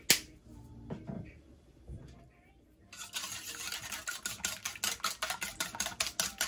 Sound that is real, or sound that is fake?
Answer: real